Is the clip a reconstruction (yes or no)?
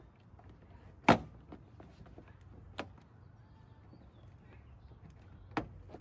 no